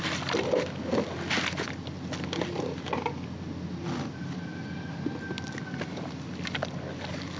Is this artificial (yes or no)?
no